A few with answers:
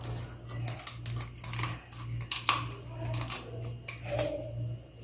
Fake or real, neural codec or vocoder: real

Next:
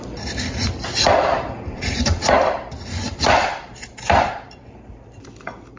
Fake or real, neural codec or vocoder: fake, vocoder, BigVGAN v2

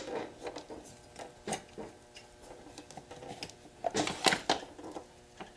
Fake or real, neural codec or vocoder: real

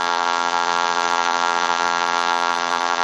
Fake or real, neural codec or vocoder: fake, vocoder, BigVGAN v2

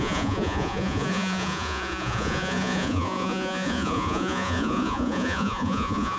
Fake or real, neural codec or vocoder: fake, vocoder, Vocos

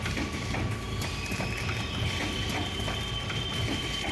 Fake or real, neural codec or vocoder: real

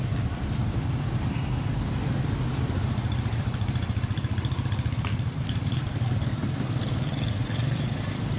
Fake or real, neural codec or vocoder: fake, vocoder, BigVGAN v2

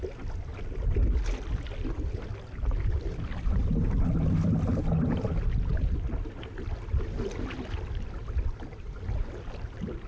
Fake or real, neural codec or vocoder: real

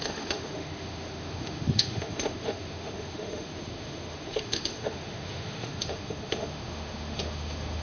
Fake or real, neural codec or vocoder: fake, autoencoder, DAC-VAE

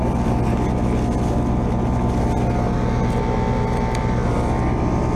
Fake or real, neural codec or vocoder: real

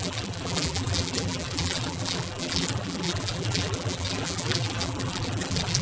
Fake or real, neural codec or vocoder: fake, vocoder, BigVGAN v2